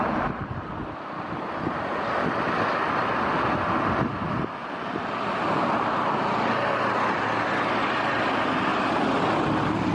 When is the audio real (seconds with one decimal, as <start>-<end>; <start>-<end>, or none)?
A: 0.0-9.9